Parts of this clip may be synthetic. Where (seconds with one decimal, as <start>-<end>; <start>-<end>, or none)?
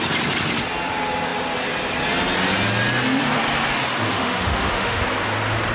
4.1-5.0